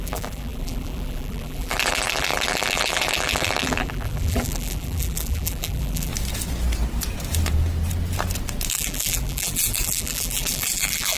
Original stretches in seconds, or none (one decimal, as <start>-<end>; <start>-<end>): 6.1-8.7